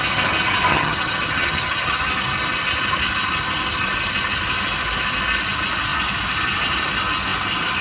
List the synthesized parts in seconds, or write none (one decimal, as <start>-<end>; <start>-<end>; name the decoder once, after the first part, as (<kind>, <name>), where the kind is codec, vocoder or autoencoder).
0.7-2.1 (vocoder, HiFi-GAN)